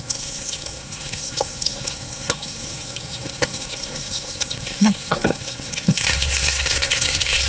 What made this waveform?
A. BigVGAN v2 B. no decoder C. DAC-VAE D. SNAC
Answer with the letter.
D